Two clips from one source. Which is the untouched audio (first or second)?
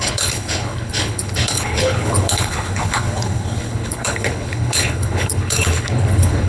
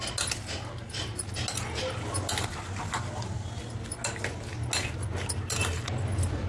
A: second